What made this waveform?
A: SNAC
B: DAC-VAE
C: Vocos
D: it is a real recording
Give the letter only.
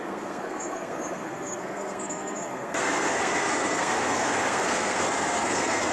A